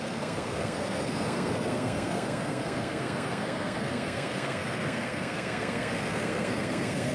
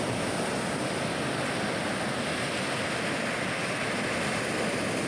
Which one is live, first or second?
second